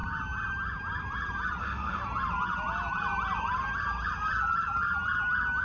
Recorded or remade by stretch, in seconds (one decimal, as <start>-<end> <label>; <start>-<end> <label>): 0.0-1.6 recorded; 1.6-2.0 remade; 2.0-5.6 recorded